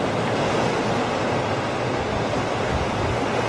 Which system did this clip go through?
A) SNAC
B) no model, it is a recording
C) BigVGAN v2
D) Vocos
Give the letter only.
B